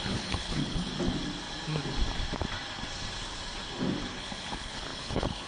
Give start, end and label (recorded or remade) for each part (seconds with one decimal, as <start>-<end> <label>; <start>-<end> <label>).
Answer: 0.0-0.9 remade; 0.9-4.2 recorded; 4.2-5.5 remade